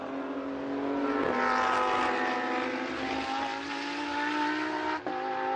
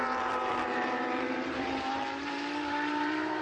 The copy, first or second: second